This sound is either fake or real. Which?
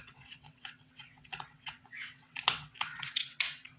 fake